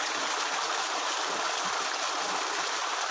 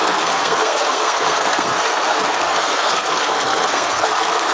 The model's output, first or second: second